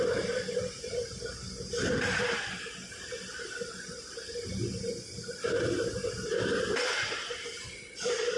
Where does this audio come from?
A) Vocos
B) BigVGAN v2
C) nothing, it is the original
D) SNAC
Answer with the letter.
C